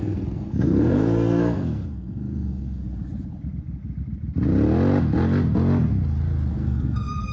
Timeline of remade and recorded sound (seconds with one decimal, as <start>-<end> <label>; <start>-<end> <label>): 0.0-2.8 remade; 2.8-6.5 recorded; 6.5-7.3 remade